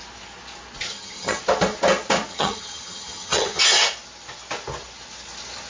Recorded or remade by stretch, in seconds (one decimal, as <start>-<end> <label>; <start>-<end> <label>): 0.0-0.9 recorded; 0.9-1.4 remade; 1.4-2.3 recorded; 2.3-3.6 remade; 3.6-5.7 recorded